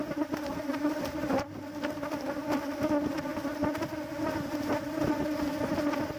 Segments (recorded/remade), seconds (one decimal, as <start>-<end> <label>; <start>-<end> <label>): 0.0-2.9 remade; 2.9-6.2 recorded

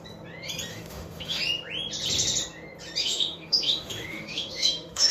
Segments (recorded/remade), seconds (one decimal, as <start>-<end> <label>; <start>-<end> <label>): 0.0-0.7 recorded; 0.7-1.4 remade; 1.4-3.0 recorded; 3.0-5.1 remade